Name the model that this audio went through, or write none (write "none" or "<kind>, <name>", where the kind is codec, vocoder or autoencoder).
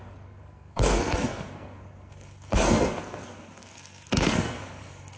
codec, SNAC